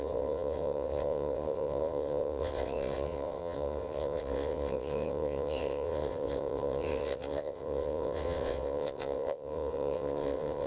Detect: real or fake fake